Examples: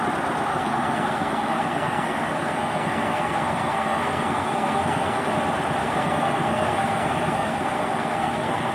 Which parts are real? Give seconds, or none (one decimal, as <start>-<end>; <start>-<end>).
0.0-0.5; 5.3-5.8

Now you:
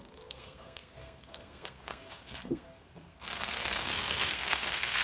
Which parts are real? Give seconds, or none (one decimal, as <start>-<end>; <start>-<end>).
none

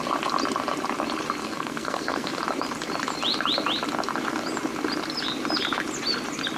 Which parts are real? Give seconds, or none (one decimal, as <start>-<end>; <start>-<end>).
0.0-1.4; 2.4-6.6

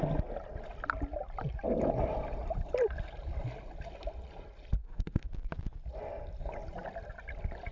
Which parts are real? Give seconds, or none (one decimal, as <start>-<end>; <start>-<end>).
0.0-4.8; 5.3-7.7

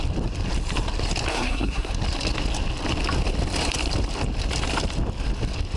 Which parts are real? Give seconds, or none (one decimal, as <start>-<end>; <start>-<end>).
0.0-1.3; 1.9-5.8

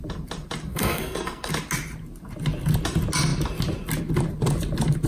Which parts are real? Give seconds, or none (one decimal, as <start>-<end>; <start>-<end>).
0.0-0.7; 1.5-5.1